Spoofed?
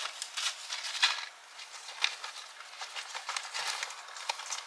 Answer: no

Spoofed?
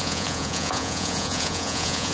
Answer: yes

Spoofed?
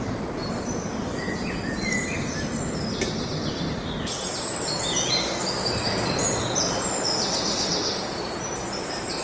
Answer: yes